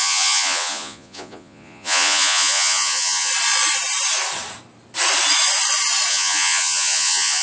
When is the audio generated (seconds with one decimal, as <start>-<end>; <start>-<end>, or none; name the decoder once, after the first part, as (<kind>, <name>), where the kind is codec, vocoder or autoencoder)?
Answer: 0.0-3.3 (vocoder, Vocos); 6.1-7.4